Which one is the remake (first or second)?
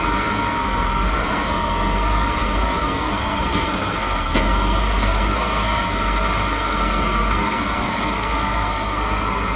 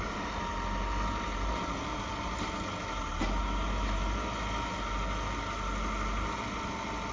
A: first